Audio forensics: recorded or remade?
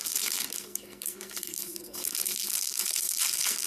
remade